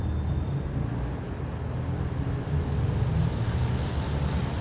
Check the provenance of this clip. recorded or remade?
recorded